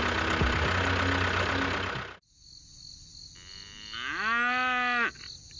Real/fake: real